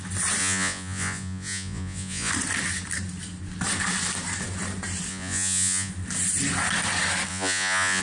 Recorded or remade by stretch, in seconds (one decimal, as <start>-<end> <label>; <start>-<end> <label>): 0.0-0.4 recorded; 0.4-2.3 remade; 2.3-5.1 recorded; 5.1-5.9 remade; 5.9-7.3 recorded; 7.3-8.0 remade